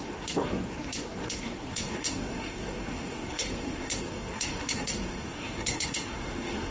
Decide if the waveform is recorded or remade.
remade